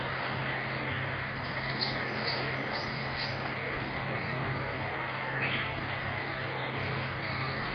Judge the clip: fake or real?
fake